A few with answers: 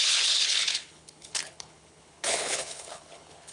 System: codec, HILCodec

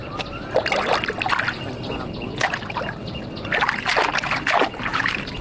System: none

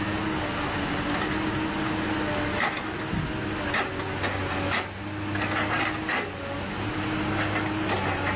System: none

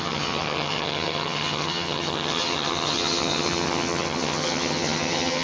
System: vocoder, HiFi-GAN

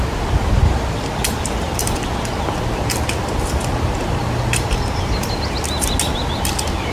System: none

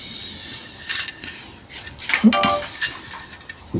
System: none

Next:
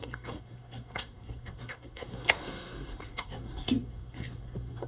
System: codec, SNAC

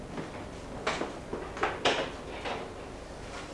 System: none